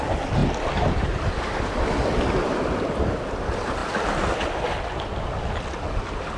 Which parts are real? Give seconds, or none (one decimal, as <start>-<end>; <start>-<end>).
0.0-6.4